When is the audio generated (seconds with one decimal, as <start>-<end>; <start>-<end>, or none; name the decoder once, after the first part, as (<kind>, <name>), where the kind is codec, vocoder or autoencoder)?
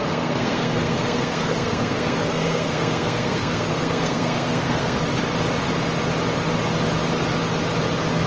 0.0-5.0 (codec, SNAC)